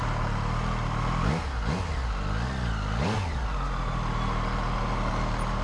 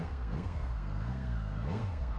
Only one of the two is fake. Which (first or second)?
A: second